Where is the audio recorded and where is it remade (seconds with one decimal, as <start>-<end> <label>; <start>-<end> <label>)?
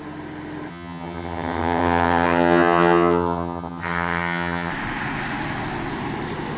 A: 0.0-0.7 recorded; 0.7-4.7 remade; 4.7-6.6 recorded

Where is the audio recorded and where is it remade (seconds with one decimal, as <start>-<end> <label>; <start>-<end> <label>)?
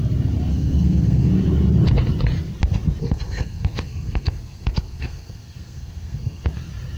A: 0.0-0.5 recorded; 0.5-1.3 remade; 1.3-3.0 recorded; 3.0-6.5 remade; 6.5-7.0 recorded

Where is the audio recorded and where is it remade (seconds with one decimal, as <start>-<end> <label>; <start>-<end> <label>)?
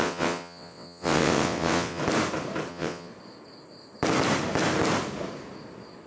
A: 0.0-2.0 remade; 2.0-2.7 recorded; 2.7-3.1 remade; 3.1-6.1 recorded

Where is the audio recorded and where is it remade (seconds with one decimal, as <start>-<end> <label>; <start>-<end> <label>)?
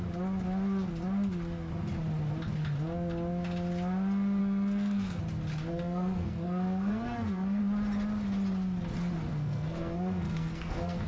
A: 0.0-4.4 recorded; 4.4-5.2 remade; 5.2-5.7 recorded; 5.7-7.6 remade; 7.6-9.3 recorded; 9.3-11.1 remade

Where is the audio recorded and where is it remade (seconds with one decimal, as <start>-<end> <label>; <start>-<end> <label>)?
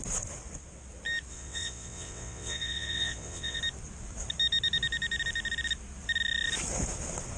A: 0.0-1.3 recorded; 1.3-3.6 remade; 3.6-7.4 recorded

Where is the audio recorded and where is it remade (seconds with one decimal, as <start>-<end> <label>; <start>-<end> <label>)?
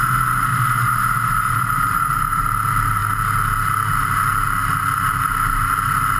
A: 0.0-0.5 recorded; 0.5-2.4 remade; 2.4-6.2 recorded